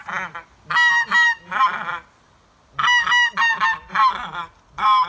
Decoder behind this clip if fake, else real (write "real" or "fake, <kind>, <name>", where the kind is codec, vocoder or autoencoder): real